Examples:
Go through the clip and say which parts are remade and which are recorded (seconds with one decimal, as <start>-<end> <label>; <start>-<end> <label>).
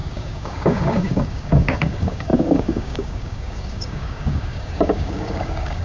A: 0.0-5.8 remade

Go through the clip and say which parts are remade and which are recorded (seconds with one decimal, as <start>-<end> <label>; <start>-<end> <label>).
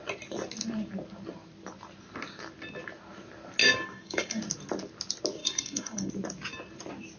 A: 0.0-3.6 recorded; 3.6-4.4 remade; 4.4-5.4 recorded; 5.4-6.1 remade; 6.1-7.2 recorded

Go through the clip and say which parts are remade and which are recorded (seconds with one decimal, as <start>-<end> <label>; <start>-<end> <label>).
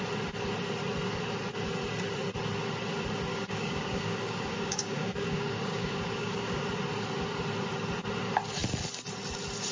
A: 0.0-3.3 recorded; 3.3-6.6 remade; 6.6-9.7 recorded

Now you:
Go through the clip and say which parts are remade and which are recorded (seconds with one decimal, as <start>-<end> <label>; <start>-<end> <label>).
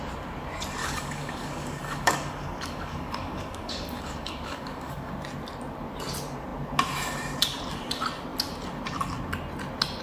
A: 0.0-0.8 recorded; 0.8-5.1 remade; 5.1-10.0 recorded